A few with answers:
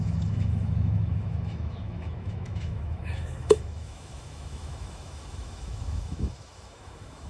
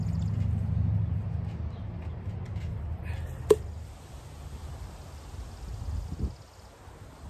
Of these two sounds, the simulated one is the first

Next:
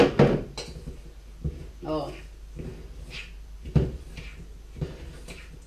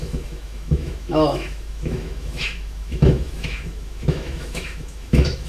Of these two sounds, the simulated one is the second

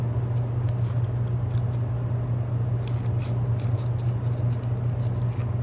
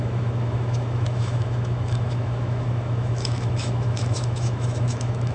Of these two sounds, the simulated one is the second